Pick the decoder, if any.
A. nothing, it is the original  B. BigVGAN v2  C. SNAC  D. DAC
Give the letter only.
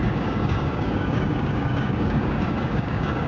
D